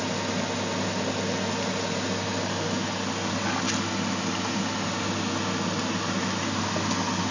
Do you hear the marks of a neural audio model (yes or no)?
no